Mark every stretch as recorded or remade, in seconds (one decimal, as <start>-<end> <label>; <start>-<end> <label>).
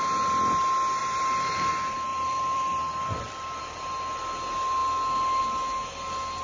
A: 0.0-1.0 recorded; 1.0-1.7 remade; 1.7-2.1 recorded; 2.1-3.6 remade; 3.6-6.4 recorded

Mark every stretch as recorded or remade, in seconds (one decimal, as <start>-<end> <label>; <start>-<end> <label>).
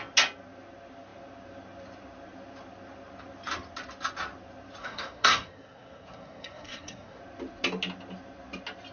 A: 0.0-4.8 recorded; 4.8-7.2 remade; 7.2-8.9 recorded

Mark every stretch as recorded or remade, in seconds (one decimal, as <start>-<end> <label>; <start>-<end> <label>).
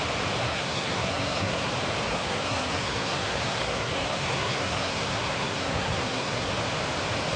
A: 0.0-0.4 recorded; 0.4-1.7 remade; 1.7-2.1 recorded; 2.1-6.5 remade; 6.5-7.4 recorded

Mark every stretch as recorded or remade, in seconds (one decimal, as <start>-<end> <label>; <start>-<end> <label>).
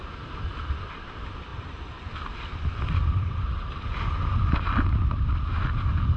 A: 0.0-6.2 recorded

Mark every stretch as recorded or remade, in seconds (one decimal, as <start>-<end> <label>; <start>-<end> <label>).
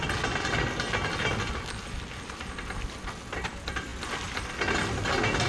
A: 0.0-5.5 recorded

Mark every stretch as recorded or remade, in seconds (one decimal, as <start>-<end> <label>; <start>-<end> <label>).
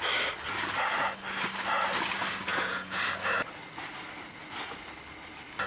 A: 0.0-2.5 recorded; 2.5-3.0 remade; 3.0-5.7 recorded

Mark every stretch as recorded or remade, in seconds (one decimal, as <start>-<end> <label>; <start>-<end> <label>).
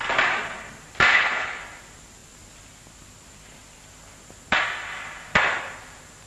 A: 0.0-1.1 recorded; 1.1-1.6 remade; 1.6-6.3 recorded